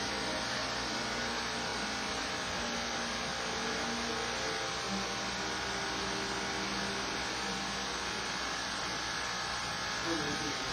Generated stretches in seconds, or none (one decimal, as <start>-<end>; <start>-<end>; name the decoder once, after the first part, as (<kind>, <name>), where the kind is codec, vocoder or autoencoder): none

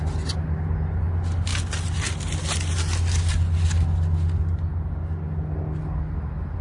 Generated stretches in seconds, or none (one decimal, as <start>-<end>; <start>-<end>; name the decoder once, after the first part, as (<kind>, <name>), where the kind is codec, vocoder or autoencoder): none

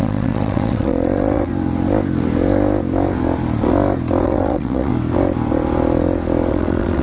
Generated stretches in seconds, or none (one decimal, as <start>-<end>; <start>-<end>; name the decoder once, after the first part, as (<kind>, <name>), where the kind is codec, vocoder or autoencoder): 0.0-1.5 (vocoder, WaveNeXt); 4.2-4.9; 6.5-7.0

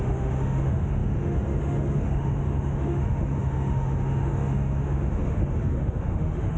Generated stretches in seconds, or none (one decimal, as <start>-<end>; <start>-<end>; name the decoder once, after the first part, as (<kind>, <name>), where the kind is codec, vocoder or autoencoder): 0.0-6.6 (autoencoder, DAC-VAE)

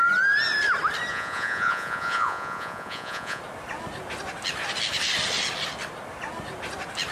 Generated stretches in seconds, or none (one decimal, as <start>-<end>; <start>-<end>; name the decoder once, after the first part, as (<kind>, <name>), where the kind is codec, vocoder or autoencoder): 1.1-3.4 (vocoder, Vocos)

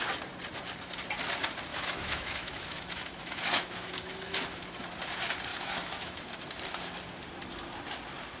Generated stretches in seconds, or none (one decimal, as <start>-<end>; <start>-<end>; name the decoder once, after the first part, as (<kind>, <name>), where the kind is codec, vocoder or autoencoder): 1.7-4.6 (autoencoder, DAC-VAE); 5.5-6.3

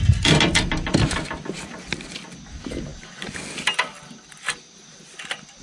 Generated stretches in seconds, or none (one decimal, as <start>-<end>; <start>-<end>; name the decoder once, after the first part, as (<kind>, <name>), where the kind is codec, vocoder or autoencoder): none